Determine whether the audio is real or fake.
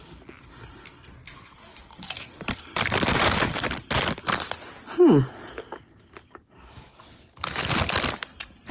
real